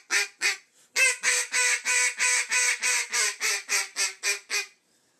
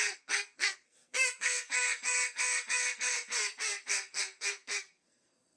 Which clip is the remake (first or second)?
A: second